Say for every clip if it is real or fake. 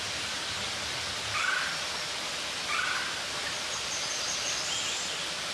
real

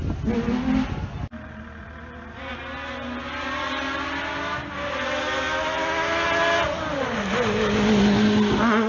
real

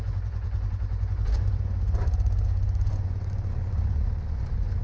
fake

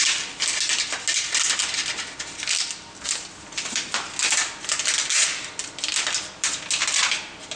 real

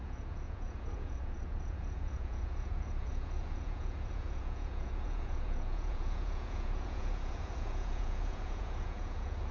fake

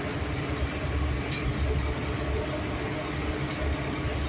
real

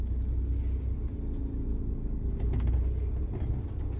real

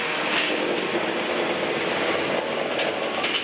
real